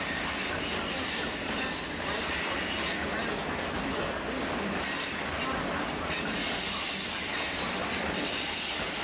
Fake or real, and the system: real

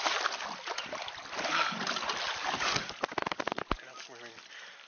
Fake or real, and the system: real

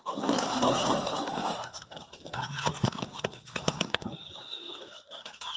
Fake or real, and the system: fake, codec, SNAC